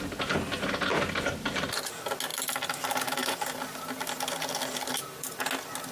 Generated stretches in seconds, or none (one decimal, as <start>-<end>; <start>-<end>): 2.3-5.4